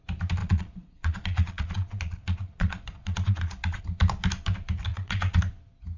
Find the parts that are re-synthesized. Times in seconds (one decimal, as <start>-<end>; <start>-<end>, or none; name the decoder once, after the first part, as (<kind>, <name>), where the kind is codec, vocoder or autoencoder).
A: 0.4-3.8 (vocoder, Vocos); 4.9-5.4